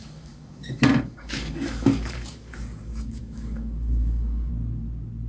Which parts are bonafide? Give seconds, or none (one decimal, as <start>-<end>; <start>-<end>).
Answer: 4.5-5.3